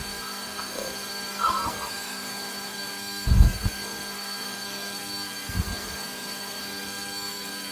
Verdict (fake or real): fake